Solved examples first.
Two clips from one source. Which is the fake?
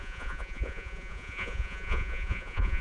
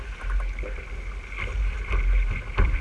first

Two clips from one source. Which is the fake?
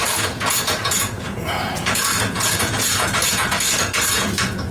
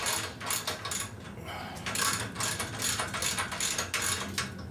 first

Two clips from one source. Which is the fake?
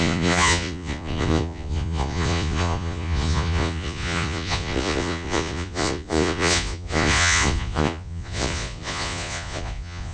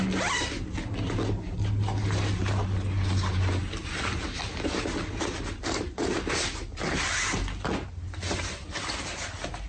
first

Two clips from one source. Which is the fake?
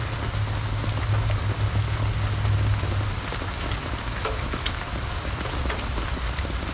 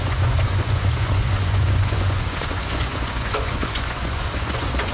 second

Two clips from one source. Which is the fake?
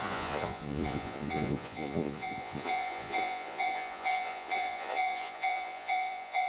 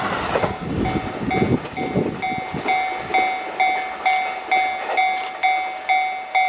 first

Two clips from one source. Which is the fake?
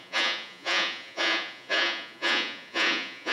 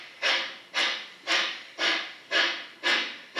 first